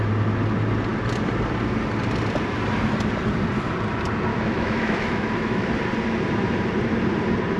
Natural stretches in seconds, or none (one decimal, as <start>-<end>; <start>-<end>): 0.0-4.3; 5.7-7.6